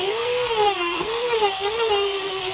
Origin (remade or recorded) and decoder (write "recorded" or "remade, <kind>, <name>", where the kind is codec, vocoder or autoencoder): remade, codec, SNAC